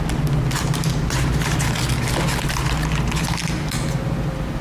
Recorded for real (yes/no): yes